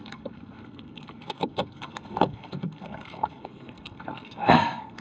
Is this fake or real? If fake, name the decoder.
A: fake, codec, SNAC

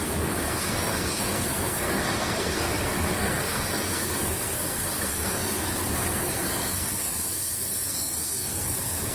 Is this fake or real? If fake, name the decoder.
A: fake, codec, SNAC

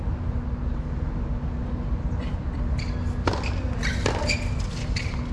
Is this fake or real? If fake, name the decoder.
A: real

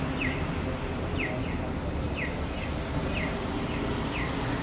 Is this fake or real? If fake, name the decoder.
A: real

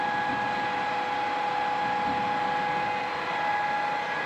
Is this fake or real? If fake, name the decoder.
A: real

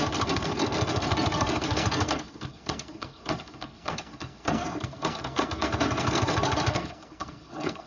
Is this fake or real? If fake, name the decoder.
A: fake, codec, SNAC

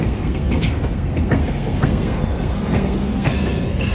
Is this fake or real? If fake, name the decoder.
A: fake, codec, SNAC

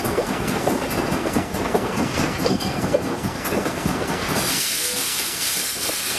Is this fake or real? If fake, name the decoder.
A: fake, codec, SNAC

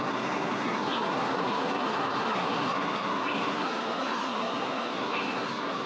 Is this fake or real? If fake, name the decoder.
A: fake, codec, SNAC